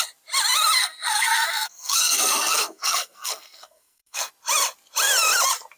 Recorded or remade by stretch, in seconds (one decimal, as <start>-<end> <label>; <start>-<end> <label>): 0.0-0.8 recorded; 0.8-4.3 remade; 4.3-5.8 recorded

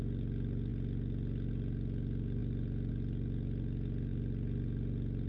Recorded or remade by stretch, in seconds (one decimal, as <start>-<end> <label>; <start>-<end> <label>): 0.0-5.3 recorded

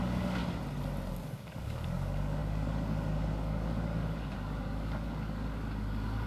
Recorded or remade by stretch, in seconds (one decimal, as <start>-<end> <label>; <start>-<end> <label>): 0.0-0.4 remade; 0.4-1.1 recorded; 1.1-6.3 remade